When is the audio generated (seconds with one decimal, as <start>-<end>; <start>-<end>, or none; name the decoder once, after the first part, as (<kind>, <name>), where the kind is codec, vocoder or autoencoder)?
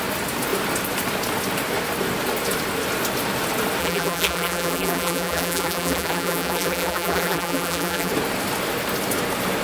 3.8-8.1 (vocoder, BigVGAN v2)